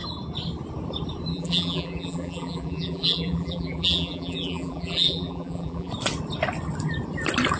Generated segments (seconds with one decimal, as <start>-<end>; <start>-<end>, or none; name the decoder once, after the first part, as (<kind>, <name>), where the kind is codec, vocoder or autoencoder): 1.3-5.9 (vocoder, BigVGAN v2)